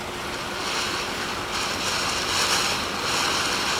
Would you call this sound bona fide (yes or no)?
yes